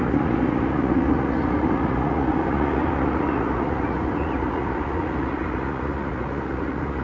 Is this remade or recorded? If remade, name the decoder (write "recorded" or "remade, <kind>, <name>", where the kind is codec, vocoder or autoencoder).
remade, vocoder, Vocos